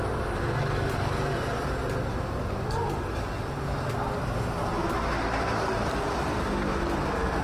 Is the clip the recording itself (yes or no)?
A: yes